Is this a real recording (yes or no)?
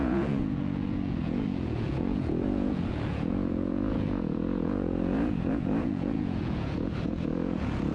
no